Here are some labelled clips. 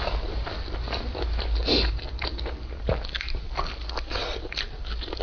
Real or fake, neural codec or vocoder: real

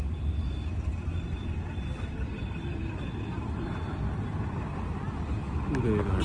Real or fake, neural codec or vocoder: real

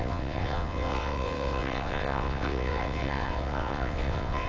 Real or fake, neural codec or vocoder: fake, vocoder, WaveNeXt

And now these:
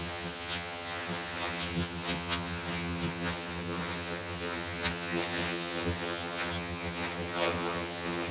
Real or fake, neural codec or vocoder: fake, vocoder, HiFi-GAN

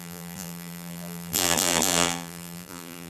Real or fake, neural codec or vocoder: fake, vocoder, BigVGAN v2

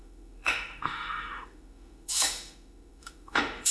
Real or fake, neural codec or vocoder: fake, autoencoder, DAC-VAE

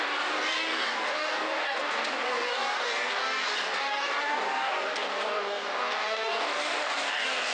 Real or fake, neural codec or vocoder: fake, codec, DAC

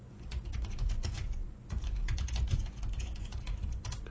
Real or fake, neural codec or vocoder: fake, vocoder, Vocos